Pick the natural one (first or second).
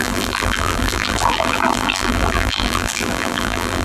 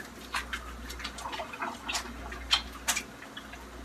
second